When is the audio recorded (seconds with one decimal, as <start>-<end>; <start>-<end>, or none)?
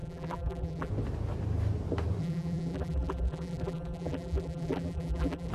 0.9-2.2